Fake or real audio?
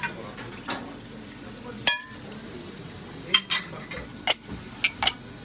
real